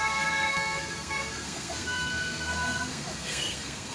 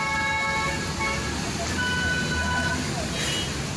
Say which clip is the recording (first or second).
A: second